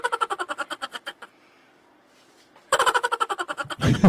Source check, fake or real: fake